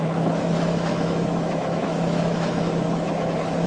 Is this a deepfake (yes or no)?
yes